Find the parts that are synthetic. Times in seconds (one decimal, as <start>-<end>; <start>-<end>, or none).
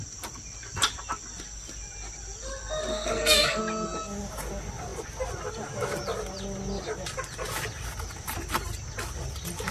2.9-3.6